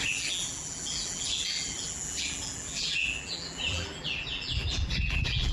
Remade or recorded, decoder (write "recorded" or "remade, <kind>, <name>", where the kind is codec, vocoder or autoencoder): remade, vocoder, BigVGAN v2